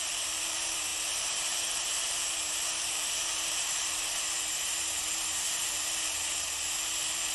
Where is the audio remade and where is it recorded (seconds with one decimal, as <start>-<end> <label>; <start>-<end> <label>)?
0.0-7.3 remade

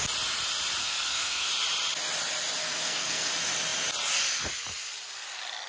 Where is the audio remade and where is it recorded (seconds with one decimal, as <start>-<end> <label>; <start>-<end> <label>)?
0.0-0.8 recorded; 0.8-1.5 remade; 1.5-2.6 recorded; 2.6-3.3 remade; 3.3-5.7 recorded

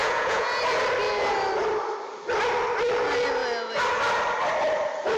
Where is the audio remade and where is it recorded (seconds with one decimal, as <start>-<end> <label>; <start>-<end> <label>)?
0.0-0.6 remade; 0.6-5.2 recorded

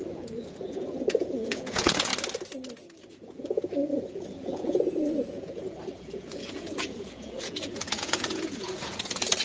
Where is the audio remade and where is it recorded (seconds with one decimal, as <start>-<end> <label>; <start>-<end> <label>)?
0.0-2.1 remade; 2.1-3.1 recorded; 3.1-9.4 remade

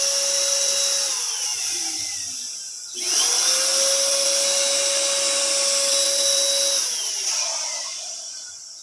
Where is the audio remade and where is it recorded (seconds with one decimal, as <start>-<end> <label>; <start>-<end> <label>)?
0.0-1.5 recorded; 1.5-2.5 remade; 2.5-8.8 recorded

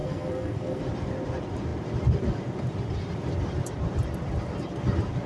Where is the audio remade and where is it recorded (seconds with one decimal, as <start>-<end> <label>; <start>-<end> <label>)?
0.0-0.8 remade; 0.8-5.3 recorded